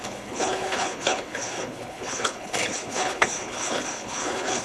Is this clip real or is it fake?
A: fake